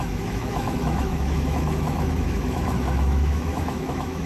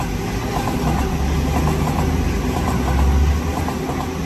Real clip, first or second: second